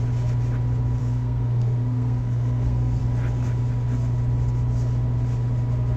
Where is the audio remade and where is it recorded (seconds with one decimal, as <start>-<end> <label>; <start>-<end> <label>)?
0.0-1.0 recorded; 1.0-3.0 remade; 3.0-6.0 recorded